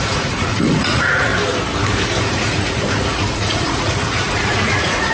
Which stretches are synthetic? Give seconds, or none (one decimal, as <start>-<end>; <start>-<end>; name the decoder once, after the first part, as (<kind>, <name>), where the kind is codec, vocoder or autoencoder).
0.0-1.3 (vocoder, Vocos); 2.2-5.1

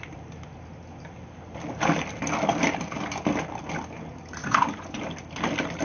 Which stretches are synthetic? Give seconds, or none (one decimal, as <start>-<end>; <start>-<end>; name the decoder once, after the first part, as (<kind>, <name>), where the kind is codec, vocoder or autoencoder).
4.4-5.0 (vocoder, Vocos)

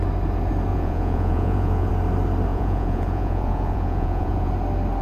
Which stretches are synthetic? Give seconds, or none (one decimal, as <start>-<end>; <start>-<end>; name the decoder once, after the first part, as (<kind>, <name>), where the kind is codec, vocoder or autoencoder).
0.7-1.9 (vocoder, Vocos); 2.5-4.5